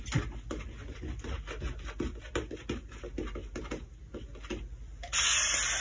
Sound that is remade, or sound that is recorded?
recorded